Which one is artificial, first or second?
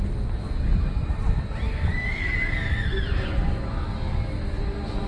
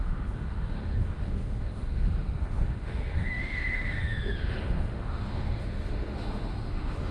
second